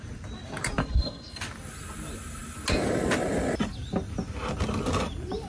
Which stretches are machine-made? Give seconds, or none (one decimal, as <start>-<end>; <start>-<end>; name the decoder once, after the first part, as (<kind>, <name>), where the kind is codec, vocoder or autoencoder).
0.8-1.4 (codec, SNAC)